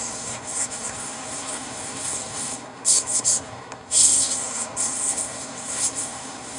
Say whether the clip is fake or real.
fake